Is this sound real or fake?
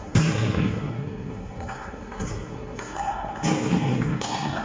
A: fake